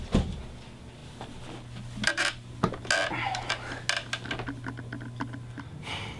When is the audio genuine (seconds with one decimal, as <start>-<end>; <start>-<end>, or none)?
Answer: 0.0-6.2